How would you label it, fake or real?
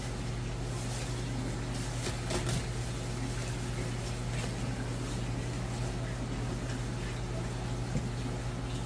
real